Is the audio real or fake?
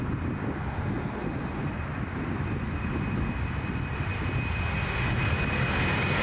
real